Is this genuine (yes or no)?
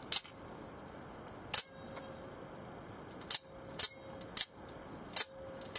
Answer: yes